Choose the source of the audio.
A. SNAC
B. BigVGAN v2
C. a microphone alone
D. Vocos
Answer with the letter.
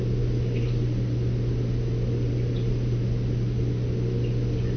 C